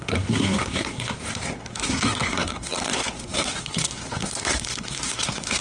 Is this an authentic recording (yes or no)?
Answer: no